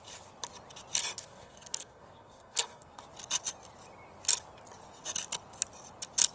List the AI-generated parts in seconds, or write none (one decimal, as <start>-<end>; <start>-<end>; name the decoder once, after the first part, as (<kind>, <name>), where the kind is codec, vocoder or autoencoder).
1.1-3.0 (codec, SNAC)